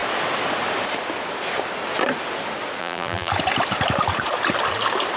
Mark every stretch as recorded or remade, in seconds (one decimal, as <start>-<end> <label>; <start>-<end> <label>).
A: 0.0-2.8 recorded; 2.8-3.3 remade; 3.3-5.2 recorded

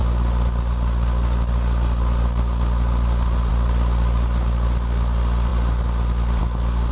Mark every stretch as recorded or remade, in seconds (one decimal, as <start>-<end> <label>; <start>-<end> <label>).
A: 0.0-3.5 remade; 3.5-5.5 recorded; 5.5-6.4 remade; 6.4-6.9 recorded

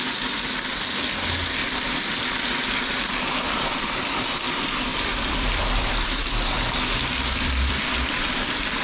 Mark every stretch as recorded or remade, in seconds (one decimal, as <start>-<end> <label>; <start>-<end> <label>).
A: 0.0-4.9 recorded; 4.9-8.8 remade

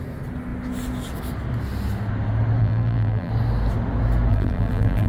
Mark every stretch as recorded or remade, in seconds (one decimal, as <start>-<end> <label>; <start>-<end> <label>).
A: 0.0-2.6 recorded; 2.6-3.3 remade; 3.3-4.3 recorded; 4.3-5.1 remade

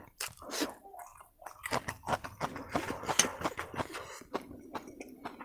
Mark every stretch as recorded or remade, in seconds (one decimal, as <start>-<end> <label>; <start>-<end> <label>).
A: 0.0-1.1 recorded; 1.1-1.9 remade; 1.9-5.4 recorded